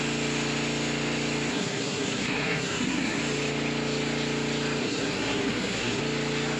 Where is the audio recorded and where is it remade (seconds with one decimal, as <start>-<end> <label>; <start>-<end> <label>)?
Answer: 0.0-1.5 recorded; 1.5-3.2 remade; 3.2-4.8 recorded; 4.8-6.0 remade; 6.0-6.6 recorded